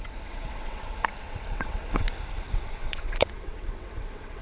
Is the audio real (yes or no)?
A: no